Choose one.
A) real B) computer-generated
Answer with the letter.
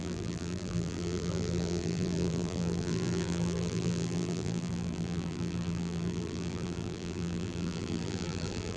B